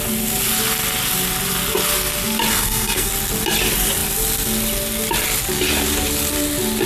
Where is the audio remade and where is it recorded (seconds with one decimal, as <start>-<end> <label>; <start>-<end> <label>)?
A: 0.0-2.5 recorded; 2.5-3.1 remade; 3.1-6.9 recorded